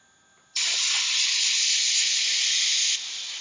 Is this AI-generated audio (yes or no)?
no